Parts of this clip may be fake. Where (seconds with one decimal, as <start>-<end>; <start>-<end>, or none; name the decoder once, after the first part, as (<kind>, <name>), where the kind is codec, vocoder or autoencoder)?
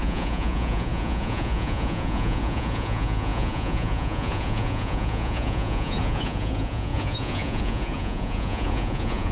0.0-9.3 (vocoder, Vocos)